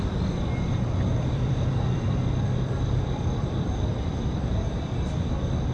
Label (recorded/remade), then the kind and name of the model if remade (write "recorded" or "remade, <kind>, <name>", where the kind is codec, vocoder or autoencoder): remade, vocoder, BigVGAN v2